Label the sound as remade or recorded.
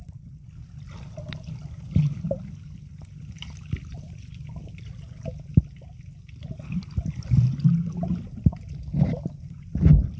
recorded